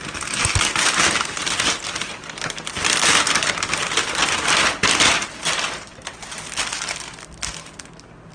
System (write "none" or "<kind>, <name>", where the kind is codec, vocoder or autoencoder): none